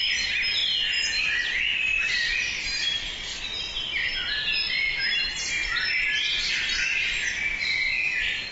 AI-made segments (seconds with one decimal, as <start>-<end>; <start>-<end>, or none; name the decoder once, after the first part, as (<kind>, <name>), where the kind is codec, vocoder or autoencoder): none